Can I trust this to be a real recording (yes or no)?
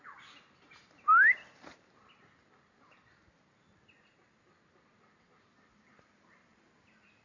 yes